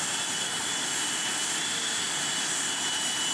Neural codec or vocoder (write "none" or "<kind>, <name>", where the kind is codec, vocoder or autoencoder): none